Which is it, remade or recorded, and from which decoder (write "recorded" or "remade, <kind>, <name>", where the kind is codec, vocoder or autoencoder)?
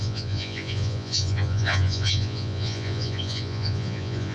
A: remade, vocoder, Vocos